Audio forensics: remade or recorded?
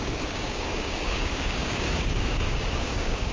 remade